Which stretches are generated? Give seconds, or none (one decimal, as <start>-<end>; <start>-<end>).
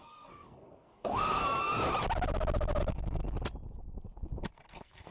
0.0-1.4; 2.8-3.2; 4.5-5.1